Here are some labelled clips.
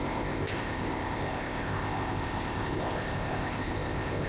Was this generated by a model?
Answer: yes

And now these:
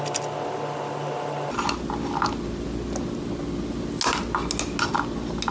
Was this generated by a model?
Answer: no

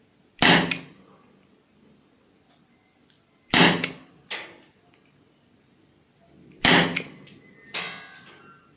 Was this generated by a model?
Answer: no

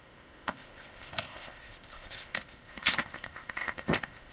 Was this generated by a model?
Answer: yes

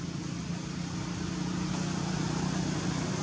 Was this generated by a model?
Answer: no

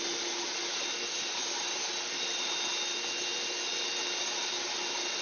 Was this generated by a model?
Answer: no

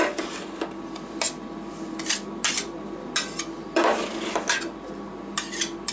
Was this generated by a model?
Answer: no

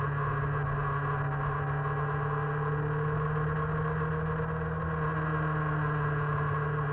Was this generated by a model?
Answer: no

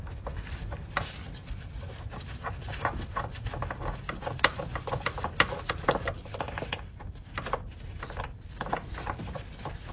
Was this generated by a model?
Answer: no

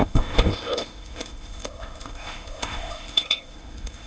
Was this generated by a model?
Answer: yes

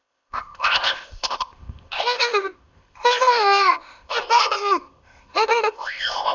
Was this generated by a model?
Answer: yes